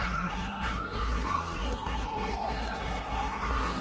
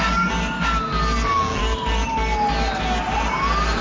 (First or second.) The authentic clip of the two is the second